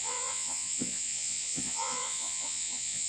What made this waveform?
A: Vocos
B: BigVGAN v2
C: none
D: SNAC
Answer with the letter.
A